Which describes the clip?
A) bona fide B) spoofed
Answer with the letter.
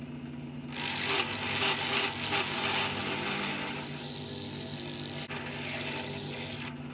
A